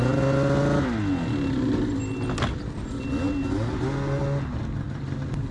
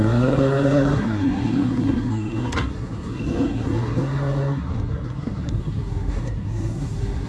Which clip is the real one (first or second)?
first